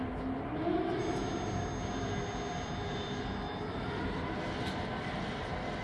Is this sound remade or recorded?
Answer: recorded